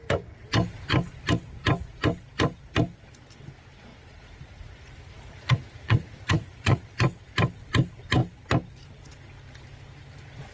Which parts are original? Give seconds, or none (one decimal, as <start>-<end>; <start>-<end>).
0.0-3.9; 6.8-10.5